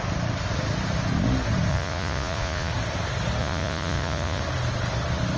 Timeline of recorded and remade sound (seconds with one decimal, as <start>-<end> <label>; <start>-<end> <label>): 0.0-1.7 recorded; 1.7-2.7 remade; 2.7-3.4 recorded; 3.4-4.4 remade; 4.4-5.4 recorded

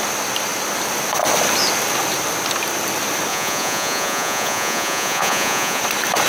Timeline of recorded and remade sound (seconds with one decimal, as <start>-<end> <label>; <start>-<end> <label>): 0.0-3.3 recorded; 3.3-5.8 remade; 5.8-6.3 recorded

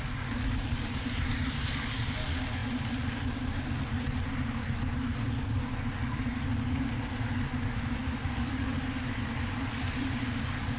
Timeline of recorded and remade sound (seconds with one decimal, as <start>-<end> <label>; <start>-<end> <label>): 0.0-10.8 recorded

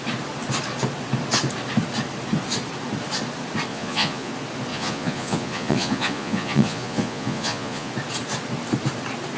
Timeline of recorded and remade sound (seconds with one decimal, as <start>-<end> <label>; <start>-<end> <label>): 0.0-3.7 recorded; 3.7-4.3 remade; 4.3-4.7 recorded; 4.7-7.9 remade; 7.9-9.4 recorded

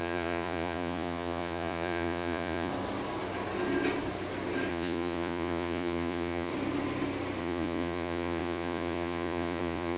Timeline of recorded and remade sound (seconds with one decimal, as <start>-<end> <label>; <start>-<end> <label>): 0.0-2.7 remade; 2.7-4.7 recorded; 4.7-6.5 remade; 6.5-7.4 recorded; 7.4-10.0 remade